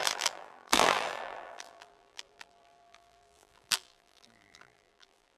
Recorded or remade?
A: remade